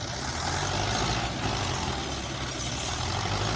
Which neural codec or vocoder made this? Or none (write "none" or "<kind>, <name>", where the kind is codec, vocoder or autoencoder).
none